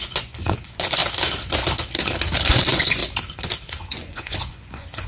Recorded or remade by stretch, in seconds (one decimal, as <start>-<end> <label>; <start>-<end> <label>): 0.0-1.0 remade; 1.0-2.5 recorded; 2.5-3.0 remade; 3.0-3.8 recorded; 3.8-5.1 remade